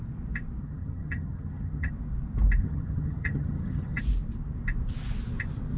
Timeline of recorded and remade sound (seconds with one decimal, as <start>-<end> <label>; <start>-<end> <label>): 0.0-0.6 recorded; 0.6-1.9 remade; 1.9-2.6 recorded; 2.6-4.0 remade; 4.0-5.8 recorded